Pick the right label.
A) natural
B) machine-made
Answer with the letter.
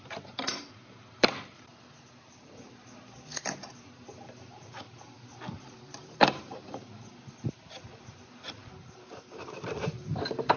B